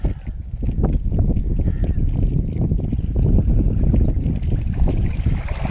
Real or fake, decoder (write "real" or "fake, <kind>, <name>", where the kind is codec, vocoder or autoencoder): real